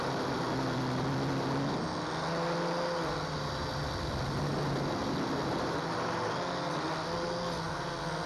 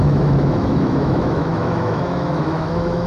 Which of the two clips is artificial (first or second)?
second